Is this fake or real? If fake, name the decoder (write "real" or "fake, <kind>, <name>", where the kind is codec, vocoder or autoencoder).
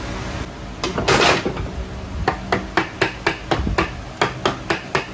real